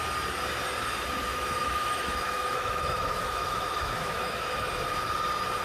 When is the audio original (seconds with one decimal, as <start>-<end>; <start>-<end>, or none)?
0.0-1.3; 4.7-5.6